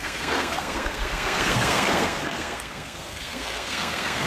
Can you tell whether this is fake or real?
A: fake